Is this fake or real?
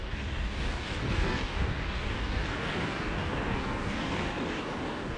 fake